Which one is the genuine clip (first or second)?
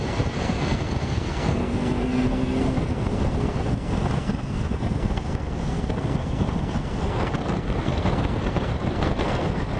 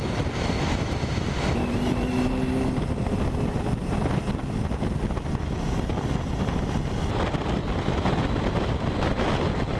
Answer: second